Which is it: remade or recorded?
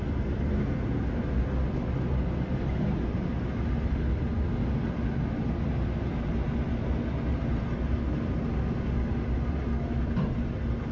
recorded